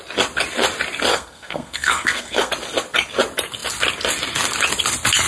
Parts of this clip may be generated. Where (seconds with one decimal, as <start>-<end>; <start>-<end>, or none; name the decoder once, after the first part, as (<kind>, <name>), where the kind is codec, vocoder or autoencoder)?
1.1-2.5 (codec, SNAC)